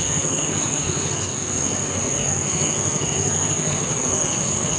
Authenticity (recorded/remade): remade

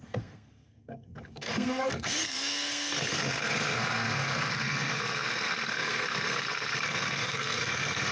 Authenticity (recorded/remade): remade